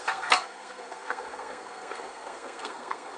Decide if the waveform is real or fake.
fake